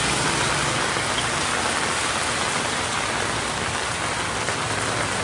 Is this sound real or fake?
real